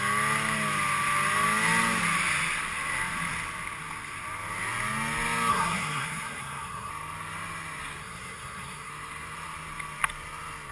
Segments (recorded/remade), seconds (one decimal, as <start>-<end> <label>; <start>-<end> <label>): 0.0-5.5 recorded; 5.5-6.9 remade; 6.9-8.0 recorded; 8.0-8.9 remade; 8.9-10.7 recorded